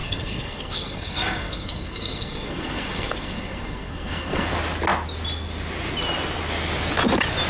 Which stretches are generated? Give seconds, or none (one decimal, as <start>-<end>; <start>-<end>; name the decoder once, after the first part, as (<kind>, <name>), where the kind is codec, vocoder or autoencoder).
0.0-4.5 (codec, SNAC)